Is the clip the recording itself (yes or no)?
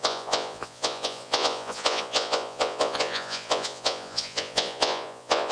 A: no